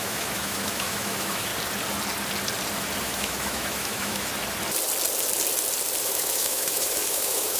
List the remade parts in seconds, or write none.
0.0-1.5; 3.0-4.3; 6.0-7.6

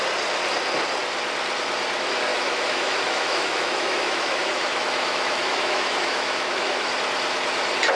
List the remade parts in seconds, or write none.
2.3-6.9

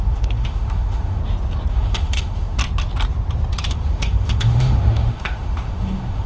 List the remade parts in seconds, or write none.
0.0-1.2; 1.7-2.6; 3.7-6.3

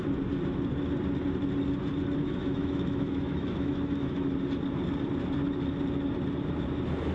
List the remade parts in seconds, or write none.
2.2-4.3

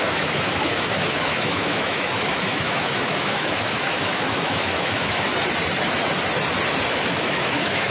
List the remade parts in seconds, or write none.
0.0-5.3; 6.9-7.9

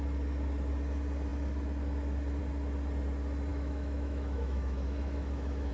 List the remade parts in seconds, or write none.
3.5-5.7